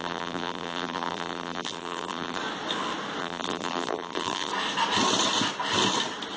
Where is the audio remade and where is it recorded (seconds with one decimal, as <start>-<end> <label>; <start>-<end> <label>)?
0.0-2.4 remade; 2.4-3.2 recorded; 3.2-4.5 remade; 4.5-6.4 recorded